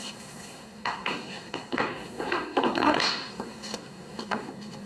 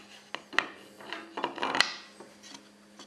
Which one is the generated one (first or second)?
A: first